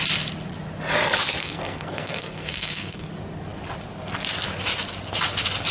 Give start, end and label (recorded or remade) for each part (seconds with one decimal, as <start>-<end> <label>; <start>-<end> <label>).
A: 0.0-1.4 recorded; 1.4-3.1 remade; 3.1-5.7 recorded